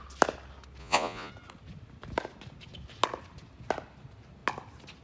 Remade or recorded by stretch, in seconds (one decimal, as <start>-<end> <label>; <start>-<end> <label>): 0.0-0.8 recorded; 0.8-1.3 remade; 1.3-5.0 recorded

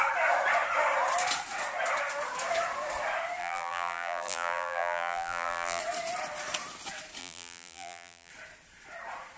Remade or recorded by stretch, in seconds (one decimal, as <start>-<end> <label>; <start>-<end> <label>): 0.0-3.4 recorded; 3.4-5.8 remade; 5.8-7.2 recorded; 7.2-8.3 remade; 8.3-9.4 recorded

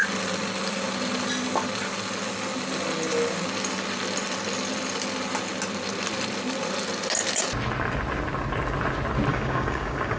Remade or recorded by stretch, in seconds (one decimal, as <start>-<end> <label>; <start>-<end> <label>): 0.0-9.3 recorded; 9.3-10.2 remade

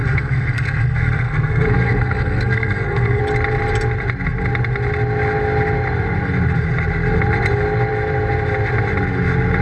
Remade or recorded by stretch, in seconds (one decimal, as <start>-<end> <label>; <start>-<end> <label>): 0.0-3.2 remade; 3.2-9.6 recorded

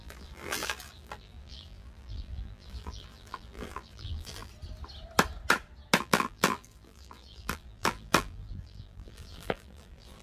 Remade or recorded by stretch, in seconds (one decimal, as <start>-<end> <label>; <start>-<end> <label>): 0.0-4.5 remade; 4.5-6.0 recorded; 6.0-10.2 remade

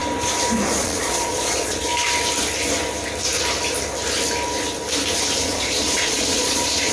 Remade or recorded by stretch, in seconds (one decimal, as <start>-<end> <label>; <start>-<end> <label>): 0.0-0.8 recorded; 0.8-1.9 remade; 1.9-5.4 recorded; 5.4-6.9 remade

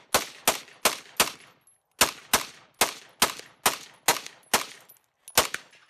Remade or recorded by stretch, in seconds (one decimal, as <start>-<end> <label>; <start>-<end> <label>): 0.0-5.9 recorded

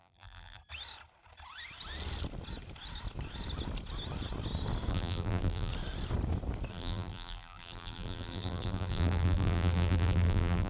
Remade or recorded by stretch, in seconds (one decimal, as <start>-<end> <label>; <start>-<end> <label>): 0.0-0.6 remade; 0.6-4.9 recorded; 4.9-5.7 remade; 5.7-6.7 recorded; 6.7-10.7 remade